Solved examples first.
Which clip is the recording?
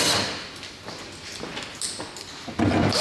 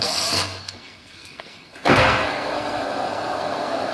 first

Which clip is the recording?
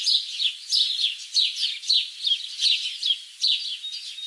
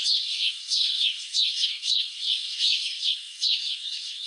first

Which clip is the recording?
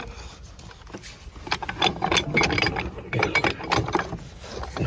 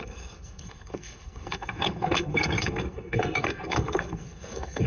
first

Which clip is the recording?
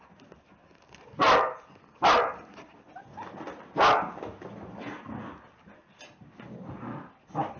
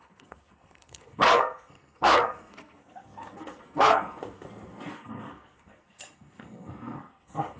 first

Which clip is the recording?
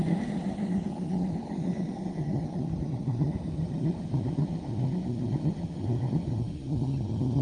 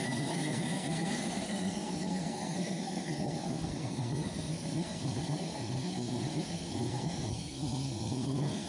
first